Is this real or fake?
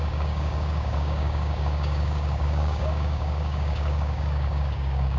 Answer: fake